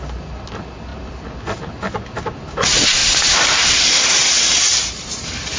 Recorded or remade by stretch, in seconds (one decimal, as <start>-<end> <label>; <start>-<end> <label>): 0.0-5.6 recorded